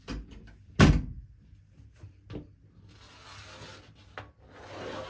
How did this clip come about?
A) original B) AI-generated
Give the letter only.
A